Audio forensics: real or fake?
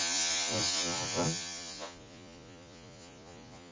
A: fake